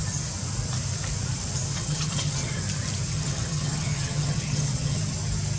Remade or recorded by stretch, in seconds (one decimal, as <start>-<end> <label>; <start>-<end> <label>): 0.0-1.7 recorded; 1.7-2.6 remade; 2.6-3.1 recorded; 3.1-5.0 remade; 5.0-5.6 recorded